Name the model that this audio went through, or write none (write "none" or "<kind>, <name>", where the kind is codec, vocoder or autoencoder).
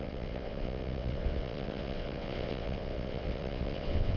vocoder, WaveNeXt